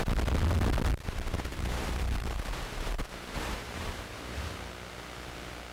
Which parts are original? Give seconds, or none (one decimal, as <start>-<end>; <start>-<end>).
0.0-1.5; 4.7-5.7